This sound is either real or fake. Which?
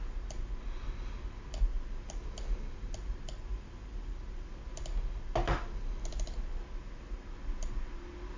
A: real